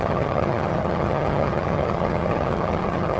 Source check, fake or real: fake